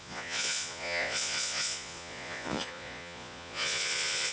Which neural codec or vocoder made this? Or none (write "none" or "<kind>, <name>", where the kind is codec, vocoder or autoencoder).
vocoder, Vocos